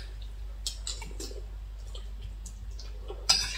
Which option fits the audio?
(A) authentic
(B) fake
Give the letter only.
A